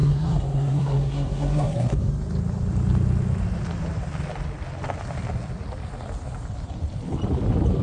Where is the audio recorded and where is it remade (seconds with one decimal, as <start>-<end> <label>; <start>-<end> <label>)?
0.0-2.1 remade; 2.1-7.8 recorded